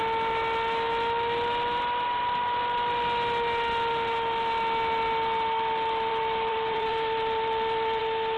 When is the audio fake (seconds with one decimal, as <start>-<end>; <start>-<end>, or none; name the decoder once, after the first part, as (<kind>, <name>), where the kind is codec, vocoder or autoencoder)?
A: 6.1-8.0 (vocoder, BigVGAN v2)